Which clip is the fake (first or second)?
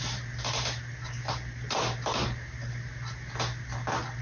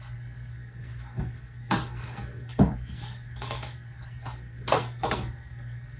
second